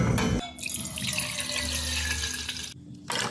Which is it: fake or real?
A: real